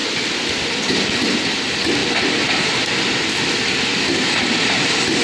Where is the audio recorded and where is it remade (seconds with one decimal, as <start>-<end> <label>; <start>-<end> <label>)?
0.0-1.3 recorded; 1.3-5.2 remade